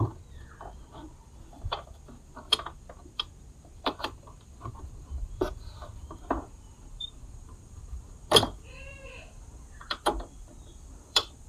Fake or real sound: fake